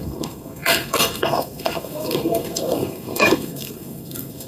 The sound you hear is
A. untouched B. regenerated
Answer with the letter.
B